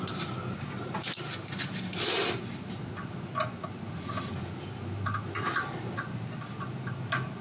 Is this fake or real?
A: real